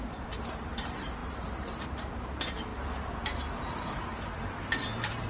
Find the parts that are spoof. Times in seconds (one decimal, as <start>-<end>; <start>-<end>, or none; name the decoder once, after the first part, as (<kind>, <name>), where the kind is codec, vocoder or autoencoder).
0.0-2.7 (vocoder, BigVGAN v2); 3.6-5.3